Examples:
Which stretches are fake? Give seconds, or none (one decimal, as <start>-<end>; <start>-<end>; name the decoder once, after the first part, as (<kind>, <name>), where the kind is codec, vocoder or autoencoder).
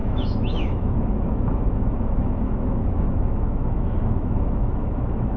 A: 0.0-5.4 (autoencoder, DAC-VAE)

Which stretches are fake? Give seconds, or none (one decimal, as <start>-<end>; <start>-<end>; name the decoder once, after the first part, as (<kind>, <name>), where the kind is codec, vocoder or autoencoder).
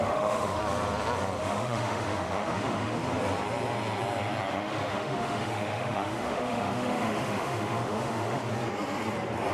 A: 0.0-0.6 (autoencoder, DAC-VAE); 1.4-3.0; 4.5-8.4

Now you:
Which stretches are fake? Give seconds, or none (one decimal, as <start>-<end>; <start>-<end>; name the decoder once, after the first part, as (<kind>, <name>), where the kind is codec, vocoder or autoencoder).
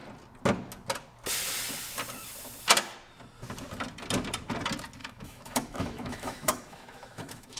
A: 5.0-7.6 (autoencoder, DAC-VAE)